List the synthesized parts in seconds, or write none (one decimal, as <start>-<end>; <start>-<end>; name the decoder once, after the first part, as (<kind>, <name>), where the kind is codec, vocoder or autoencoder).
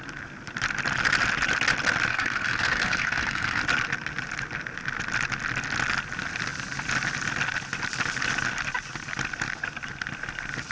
2.1-3.6 (codec, SNAC)